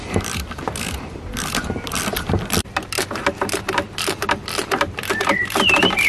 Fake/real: fake